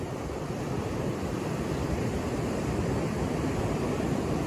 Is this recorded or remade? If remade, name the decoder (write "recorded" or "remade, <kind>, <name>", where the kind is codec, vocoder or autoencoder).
remade, vocoder, BigVGAN v2